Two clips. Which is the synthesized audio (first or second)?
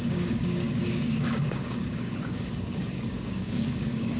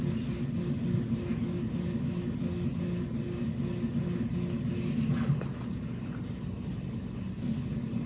first